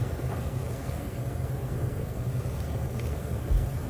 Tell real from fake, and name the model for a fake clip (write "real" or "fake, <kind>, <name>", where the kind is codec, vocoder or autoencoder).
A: fake, codec, SNAC